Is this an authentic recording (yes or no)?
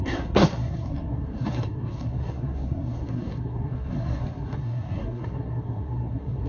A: no